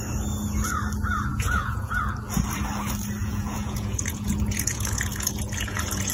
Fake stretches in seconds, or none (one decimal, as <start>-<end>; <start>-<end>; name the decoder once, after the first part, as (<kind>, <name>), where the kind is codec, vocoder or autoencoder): 1.3-2.0 (vocoder, Vocos); 3.2-6.1